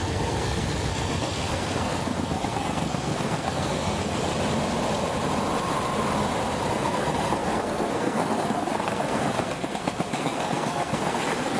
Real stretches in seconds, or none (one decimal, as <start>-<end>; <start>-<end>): 4.3-6.7